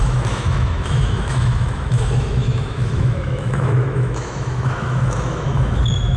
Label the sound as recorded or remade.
remade